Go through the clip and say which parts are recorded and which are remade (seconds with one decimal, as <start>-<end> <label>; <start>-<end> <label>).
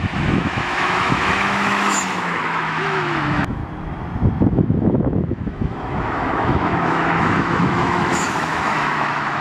0.0-3.6 remade; 3.6-4.5 recorded; 4.5-9.4 remade